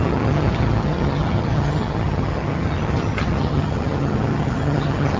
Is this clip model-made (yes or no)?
yes